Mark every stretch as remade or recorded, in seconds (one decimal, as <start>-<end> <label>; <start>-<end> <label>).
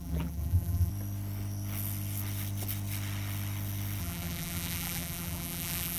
0.0-0.9 remade; 0.9-4.0 recorded; 4.0-6.0 remade